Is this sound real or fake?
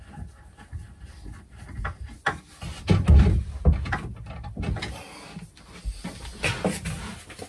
real